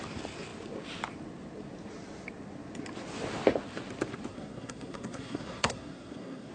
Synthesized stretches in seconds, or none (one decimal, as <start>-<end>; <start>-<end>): 4.3-6.5